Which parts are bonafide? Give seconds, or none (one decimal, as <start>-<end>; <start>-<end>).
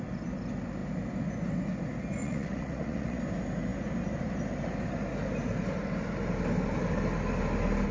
0.0-2.2; 3.2-7.9